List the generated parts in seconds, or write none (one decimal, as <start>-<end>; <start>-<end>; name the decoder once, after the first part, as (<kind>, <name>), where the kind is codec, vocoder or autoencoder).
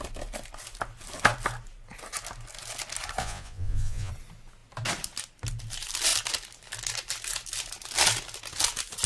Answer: 3.2-4.1 (vocoder, Vocos)